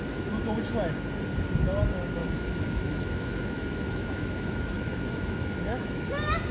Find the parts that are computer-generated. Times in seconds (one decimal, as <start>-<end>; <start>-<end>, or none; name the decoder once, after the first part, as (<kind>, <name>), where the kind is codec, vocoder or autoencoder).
2.2-6.1 (autoencoder, DAC-VAE)